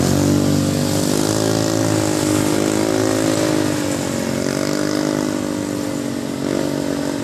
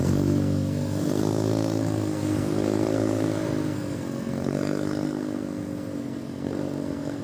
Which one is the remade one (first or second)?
second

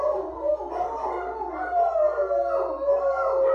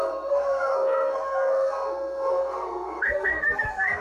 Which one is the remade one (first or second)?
second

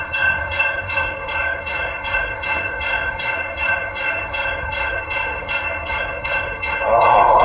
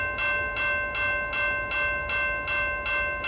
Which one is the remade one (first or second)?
first